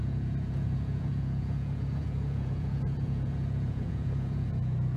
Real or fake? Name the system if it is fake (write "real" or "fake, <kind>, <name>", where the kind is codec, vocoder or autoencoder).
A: fake, vocoder, Vocos